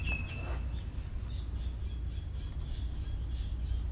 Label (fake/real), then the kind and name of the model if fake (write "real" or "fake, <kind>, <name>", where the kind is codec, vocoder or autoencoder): real